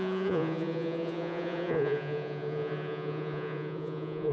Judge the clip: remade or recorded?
remade